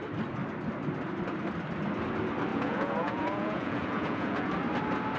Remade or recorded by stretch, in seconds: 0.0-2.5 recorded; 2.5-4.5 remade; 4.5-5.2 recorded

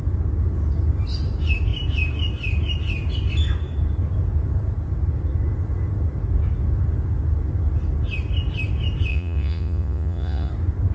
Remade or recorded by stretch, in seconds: 0.0-9.1 recorded; 9.1-10.5 remade; 10.5-10.9 recorded

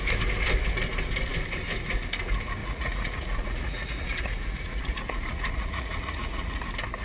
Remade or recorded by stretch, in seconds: 0.0-2.6 recorded; 2.6-6.6 remade; 6.6-7.0 recorded